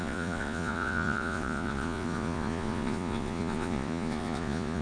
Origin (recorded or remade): remade